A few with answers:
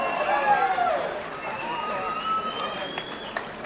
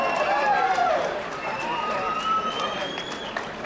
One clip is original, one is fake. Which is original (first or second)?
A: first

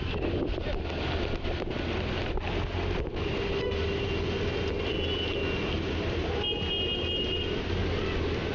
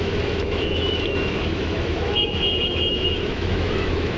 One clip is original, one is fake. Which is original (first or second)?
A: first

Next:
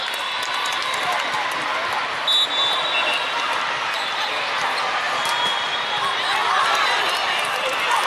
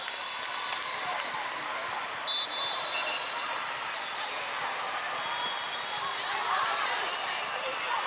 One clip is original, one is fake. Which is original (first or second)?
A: first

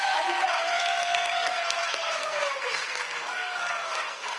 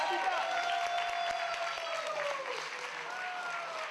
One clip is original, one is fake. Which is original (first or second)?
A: second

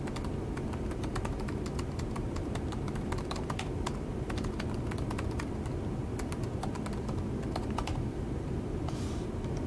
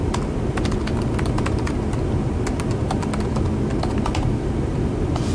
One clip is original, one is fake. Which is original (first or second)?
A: second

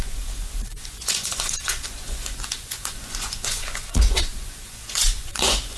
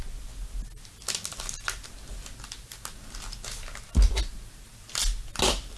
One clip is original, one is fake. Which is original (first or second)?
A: second